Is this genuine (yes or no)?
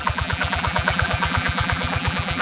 no